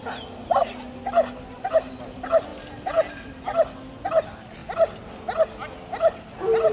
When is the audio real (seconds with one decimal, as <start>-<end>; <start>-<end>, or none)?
0.0-6.7